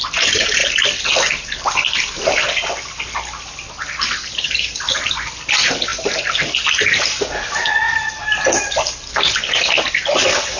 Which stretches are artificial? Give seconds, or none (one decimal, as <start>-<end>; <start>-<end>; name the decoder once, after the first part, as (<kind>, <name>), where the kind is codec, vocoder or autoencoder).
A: none